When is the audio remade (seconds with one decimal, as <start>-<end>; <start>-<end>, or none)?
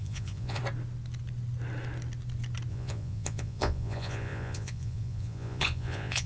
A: 0.0-0.6; 2.7-6.3